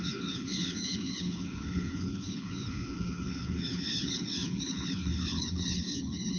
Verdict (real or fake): fake